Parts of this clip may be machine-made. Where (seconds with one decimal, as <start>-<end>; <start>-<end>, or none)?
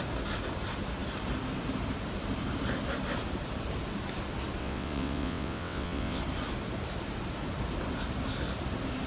4.6-6.2